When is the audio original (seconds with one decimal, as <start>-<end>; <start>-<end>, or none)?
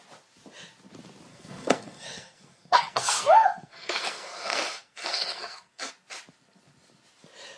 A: 0.0-1.3; 5.9-7.6